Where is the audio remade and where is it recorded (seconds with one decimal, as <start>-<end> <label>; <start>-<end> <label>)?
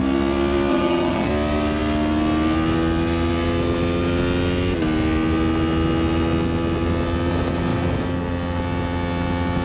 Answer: 0.0-0.7 recorded; 0.7-1.3 remade; 1.3-9.6 recorded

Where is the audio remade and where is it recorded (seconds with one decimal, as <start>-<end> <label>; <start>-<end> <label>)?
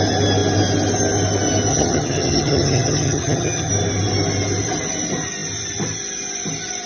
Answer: 0.0-1.7 recorded; 1.7-3.7 remade; 3.7-6.9 recorded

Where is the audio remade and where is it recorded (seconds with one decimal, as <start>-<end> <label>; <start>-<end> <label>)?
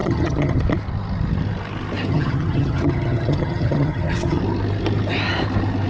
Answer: 0.0-0.6 remade; 0.6-2.1 recorded; 2.1-4.4 remade; 4.4-5.9 recorded